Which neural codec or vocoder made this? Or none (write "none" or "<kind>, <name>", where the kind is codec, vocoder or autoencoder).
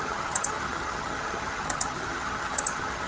vocoder, HiFi-GAN